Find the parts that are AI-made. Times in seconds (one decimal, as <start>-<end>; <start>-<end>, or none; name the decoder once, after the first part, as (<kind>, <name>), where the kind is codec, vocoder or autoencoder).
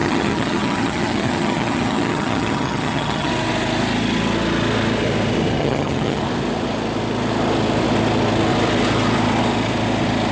0.0-3.3 (vocoder, HiFi-GAN); 5.6-6.2